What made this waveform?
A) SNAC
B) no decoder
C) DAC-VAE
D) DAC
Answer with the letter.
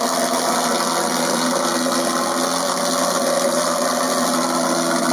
B